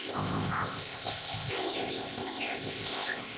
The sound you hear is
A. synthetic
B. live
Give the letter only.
A